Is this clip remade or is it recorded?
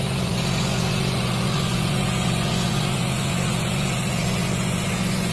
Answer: remade